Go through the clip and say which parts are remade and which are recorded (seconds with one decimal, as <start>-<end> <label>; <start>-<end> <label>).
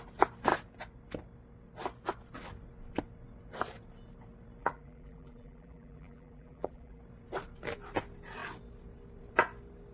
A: 0.0-4.6 recorded; 4.6-7.0 remade; 7.0-9.9 recorded